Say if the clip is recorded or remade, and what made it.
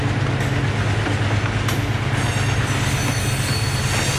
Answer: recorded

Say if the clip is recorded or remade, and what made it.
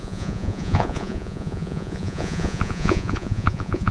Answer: remade, vocoder, Vocos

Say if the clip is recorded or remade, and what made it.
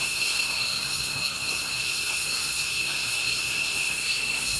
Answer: remade, codec, SNAC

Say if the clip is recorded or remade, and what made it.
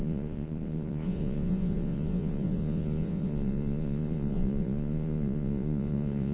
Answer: remade, vocoder, Vocos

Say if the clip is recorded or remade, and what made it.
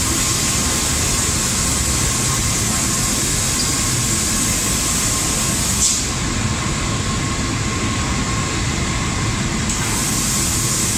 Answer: recorded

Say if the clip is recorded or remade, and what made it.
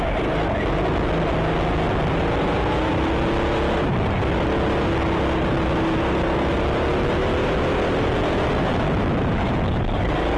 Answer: recorded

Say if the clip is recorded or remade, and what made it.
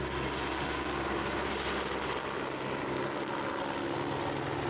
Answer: recorded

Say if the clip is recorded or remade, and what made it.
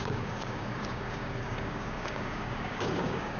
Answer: remade, codec, DAC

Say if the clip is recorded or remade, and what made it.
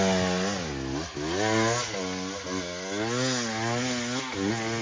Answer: recorded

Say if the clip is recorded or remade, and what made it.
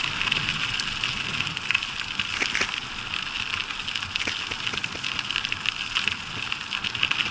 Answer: recorded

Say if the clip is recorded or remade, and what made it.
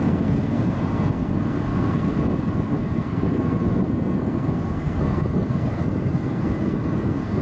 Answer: remade, codec, SNAC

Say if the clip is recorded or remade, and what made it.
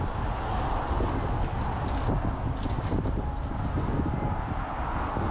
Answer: recorded